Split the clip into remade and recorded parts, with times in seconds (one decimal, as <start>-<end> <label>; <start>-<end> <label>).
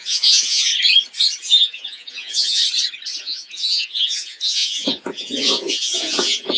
0.0-0.7 remade; 0.7-1.4 recorded; 1.4-2.6 remade; 2.6-3.2 recorded; 3.2-6.6 remade